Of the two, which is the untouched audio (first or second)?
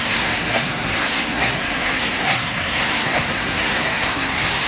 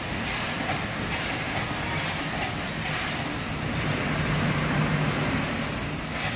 second